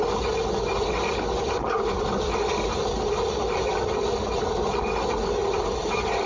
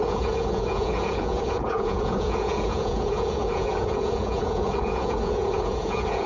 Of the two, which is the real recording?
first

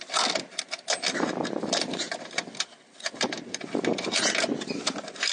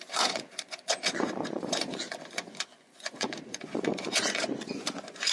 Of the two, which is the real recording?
first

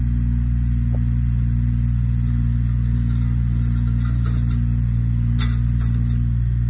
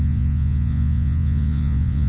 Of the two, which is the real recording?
first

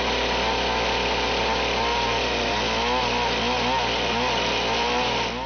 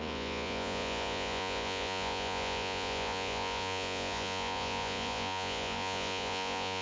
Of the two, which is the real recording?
first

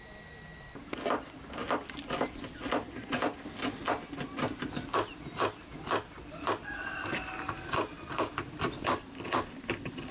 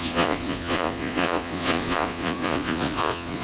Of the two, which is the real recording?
first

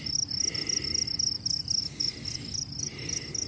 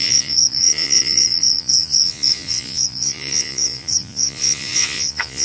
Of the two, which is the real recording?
first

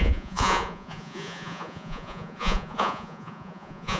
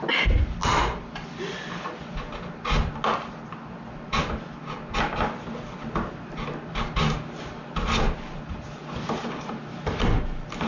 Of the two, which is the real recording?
second